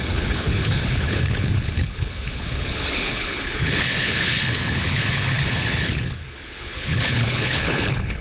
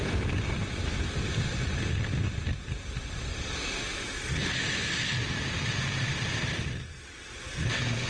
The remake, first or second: first